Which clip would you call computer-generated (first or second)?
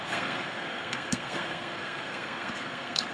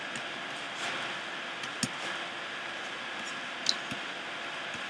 first